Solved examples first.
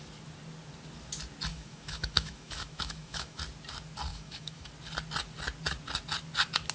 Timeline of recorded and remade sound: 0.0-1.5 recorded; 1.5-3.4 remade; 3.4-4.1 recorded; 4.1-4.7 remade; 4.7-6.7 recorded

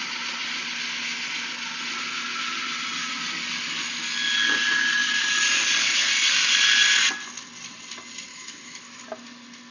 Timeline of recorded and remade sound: 0.0-8.3 recorded; 8.3-9.0 remade; 9.0-9.7 recorded

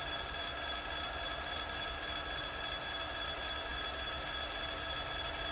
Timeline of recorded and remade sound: 0.0-5.5 recorded